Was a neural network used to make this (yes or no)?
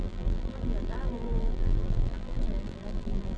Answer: yes